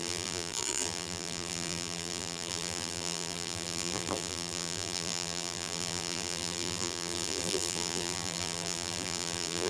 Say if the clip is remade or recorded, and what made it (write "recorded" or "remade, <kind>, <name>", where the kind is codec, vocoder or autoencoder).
remade, vocoder, BigVGAN v2